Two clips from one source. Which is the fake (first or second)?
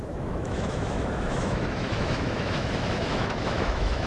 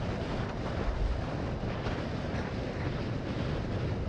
first